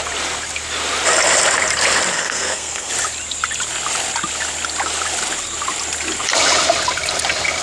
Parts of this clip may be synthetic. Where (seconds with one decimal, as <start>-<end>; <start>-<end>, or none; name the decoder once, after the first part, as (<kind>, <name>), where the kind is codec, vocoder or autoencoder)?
2.1-2.9 (codec, SNAC)